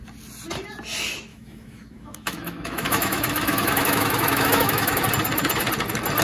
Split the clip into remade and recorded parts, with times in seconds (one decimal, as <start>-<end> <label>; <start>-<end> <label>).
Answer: 0.0-1.3 recorded; 1.3-5.0 remade; 5.0-6.2 recorded